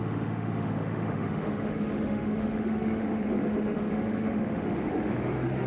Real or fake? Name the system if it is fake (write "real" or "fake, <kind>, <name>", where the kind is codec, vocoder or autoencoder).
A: fake, autoencoder, DAC-VAE